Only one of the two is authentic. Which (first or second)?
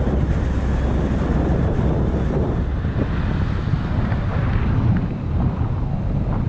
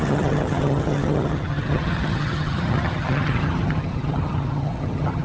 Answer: first